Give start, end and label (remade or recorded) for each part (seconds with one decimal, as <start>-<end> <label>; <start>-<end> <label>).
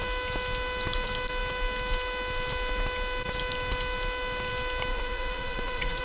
0.0-4.9 recorded; 4.9-6.0 remade